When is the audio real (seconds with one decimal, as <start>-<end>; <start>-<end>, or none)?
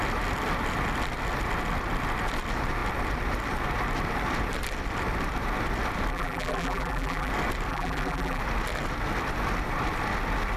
0.0-6.1; 7.3-7.7; 8.4-10.6